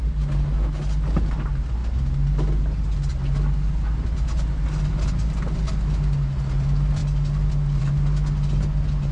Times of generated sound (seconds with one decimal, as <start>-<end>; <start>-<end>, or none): none